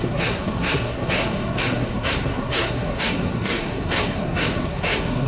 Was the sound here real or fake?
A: fake